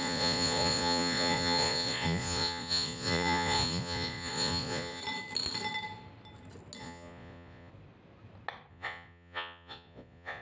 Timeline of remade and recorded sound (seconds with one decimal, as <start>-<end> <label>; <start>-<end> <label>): 0.0-5.0 remade; 5.0-6.8 recorded; 6.8-7.7 remade; 7.7-8.7 recorded; 8.7-10.4 remade